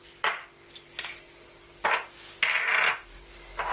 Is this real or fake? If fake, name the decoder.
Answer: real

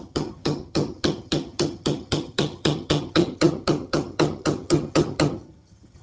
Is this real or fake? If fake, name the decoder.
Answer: fake, vocoder, HiFi-GAN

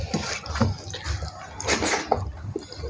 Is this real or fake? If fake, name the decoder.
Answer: real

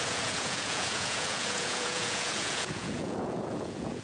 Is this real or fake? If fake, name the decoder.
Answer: fake, vocoder, Vocos